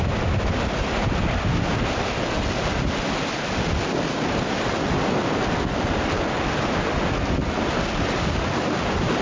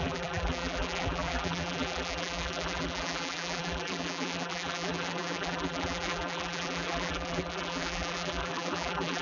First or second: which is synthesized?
second